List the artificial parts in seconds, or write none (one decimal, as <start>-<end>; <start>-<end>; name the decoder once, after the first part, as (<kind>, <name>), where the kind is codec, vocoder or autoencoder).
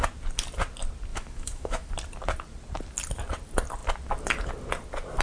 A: 1.1-1.9 (autoencoder, DAC-VAE)